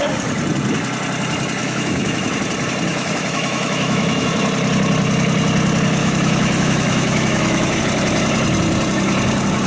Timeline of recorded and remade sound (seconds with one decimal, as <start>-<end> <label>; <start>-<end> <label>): 0.0-1.6 recorded; 1.6-2.4 remade; 2.4-2.9 recorded; 2.9-4.3 remade; 4.3-6.0 recorded; 6.0-7.8 remade; 7.8-9.7 recorded